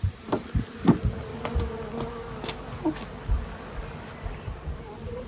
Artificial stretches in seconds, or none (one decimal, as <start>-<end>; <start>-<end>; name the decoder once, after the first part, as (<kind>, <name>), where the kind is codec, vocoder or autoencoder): 0.0-1.3 (vocoder, BigVGAN v2); 4.5-5.3